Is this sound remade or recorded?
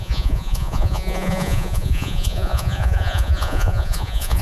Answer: remade